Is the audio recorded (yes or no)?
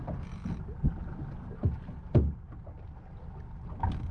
yes